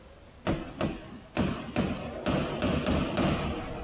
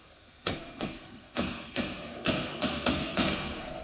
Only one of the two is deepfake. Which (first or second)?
second